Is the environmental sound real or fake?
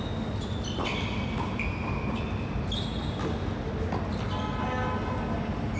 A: real